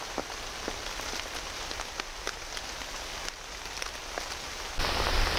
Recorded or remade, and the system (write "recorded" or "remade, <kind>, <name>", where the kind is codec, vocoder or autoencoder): recorded